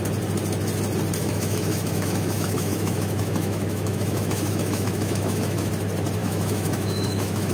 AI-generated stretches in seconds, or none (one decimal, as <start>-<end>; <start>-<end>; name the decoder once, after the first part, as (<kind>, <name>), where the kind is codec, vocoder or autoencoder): 1.2-5.7 (autoencoder, DAC-VAE); 6.2-7.5